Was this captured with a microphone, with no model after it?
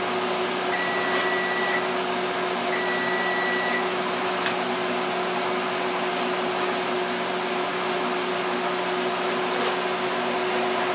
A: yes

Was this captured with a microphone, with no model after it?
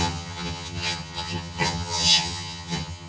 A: no